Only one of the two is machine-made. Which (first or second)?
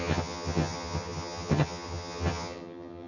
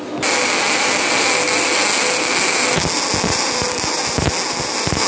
first